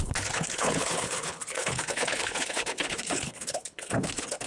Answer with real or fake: fake